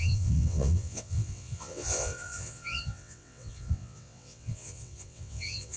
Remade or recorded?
remade